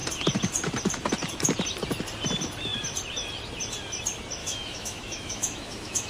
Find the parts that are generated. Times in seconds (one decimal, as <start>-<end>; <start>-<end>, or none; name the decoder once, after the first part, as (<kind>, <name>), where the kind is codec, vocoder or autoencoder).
4.4-6.1 (autoencoder, DAC-VAE)